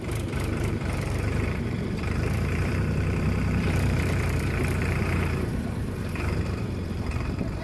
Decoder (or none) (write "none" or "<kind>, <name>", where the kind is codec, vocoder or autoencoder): vocoder, BigVGAN v2